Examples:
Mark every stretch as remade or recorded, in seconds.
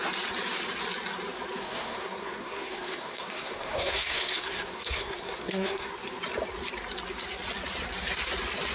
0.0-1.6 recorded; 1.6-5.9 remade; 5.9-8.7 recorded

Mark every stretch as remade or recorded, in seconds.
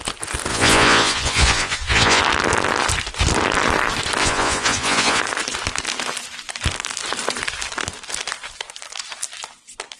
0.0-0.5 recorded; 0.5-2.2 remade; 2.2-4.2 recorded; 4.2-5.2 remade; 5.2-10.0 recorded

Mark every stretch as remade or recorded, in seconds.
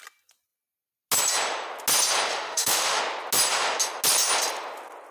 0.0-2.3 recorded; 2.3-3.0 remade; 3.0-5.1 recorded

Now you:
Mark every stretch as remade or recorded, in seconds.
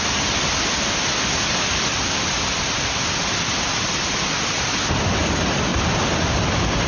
0.0-6.9 remade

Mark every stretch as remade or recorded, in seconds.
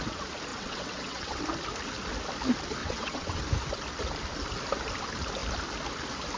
0.0-0.5 recorded; 0.5-1.4 remade; 1.4-2.8 recorded; 2.8-3.4 remade; 3.4-6.4 recorded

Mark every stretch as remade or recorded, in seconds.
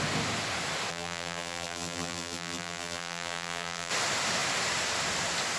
0.0-0.9 recorded; 0.9-3.9 remade; 3.9-5.6 recorded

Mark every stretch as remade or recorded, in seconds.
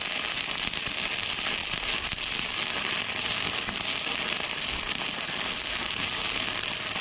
0.0-7.0 recorded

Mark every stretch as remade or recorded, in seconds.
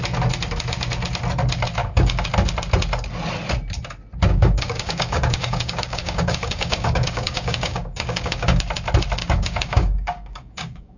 0.0-1.8 recorded; 1.8-2.3 remade; 2.3-4.3 recorded; 4.3-8.6 remade; 8.6-9.2 recorded; 9.2-11.0 remade